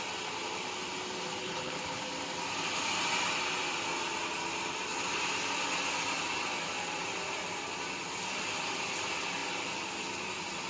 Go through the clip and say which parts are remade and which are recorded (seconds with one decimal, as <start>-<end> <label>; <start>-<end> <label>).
0.0-1.4 recorded; 1.4-2.0 remade; 2.0-10.7 recorded